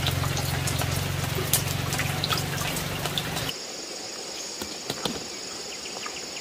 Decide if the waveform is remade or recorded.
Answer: recorded